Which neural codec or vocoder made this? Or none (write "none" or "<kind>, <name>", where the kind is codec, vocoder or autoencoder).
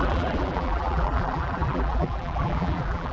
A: vocoder, BigVGAN v2